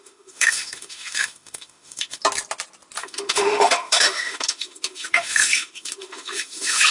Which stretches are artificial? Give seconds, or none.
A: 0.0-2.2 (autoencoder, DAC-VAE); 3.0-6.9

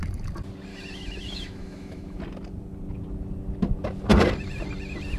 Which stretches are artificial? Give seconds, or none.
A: 0.7-2.2 (autoencoder, DAC-VAE)

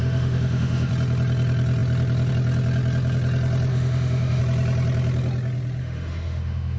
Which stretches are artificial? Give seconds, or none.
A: 0.0-0.9 (autoencoder, DAC-VAE); 3.7-4.4; 5.8-6.8

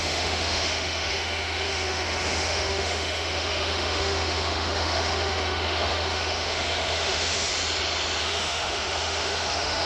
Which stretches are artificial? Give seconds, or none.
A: 0.0-7.5 (autoencoder, DAC-VAE); 8.2-9.9